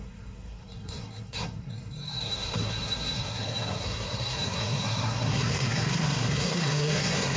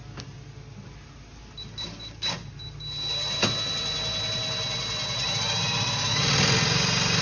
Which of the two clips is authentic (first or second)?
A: second